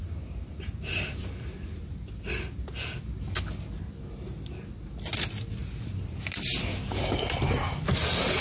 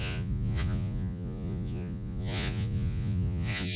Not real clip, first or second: second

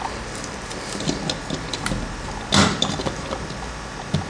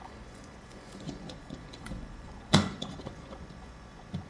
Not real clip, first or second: second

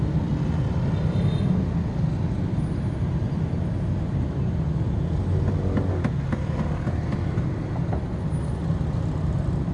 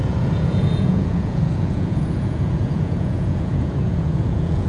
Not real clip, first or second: second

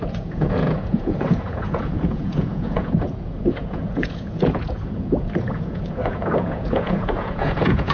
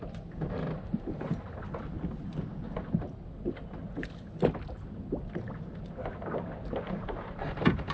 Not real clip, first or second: first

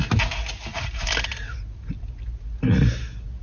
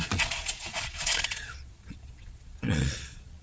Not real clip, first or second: second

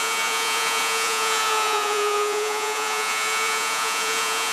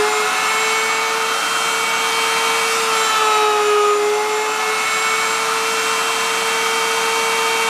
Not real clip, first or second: first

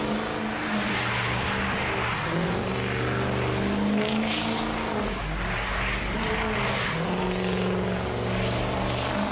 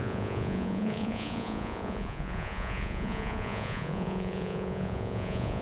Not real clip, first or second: second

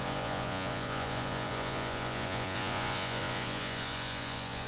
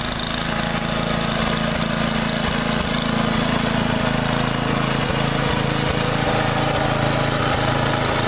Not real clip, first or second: first